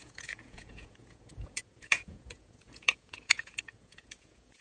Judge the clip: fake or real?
fake